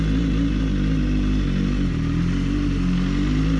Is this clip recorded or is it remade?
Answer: recorded